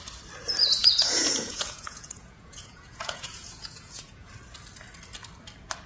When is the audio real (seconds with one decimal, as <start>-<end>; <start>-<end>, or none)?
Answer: 0.0-0.8; 4.3-5.9